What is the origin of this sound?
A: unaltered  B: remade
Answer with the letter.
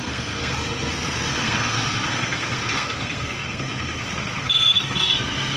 B